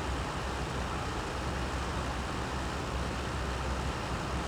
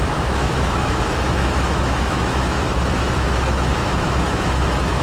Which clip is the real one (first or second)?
first